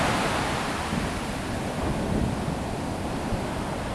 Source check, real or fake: real